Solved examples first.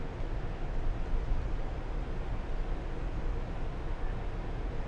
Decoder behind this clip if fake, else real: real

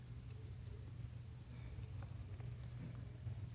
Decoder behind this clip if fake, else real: real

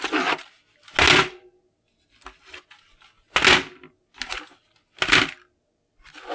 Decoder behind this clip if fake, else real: real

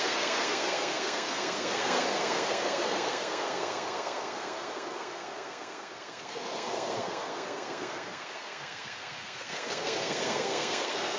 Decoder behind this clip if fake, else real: fake, codec, SNAC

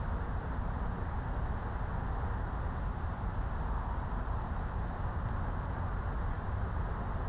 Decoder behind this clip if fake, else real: real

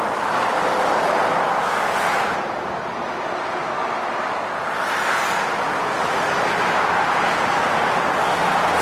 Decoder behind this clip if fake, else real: real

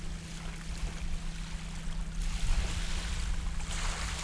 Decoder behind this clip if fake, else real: real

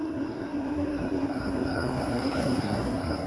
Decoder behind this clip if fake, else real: fake, codec, SNAC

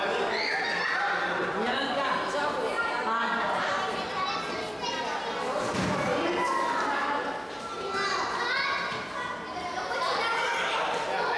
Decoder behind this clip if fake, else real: real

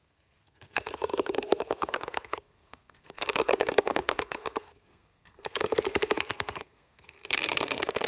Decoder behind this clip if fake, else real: fake, codec, SNAC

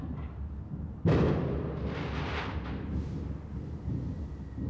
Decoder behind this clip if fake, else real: real